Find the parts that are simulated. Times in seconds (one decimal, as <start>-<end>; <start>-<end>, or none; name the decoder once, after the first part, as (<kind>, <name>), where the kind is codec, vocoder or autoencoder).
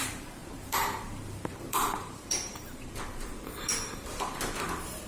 0.0-5.1 (vocoder, BigVGAN v2)